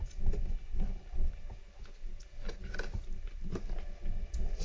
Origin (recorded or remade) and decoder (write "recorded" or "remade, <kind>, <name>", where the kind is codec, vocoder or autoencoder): recorded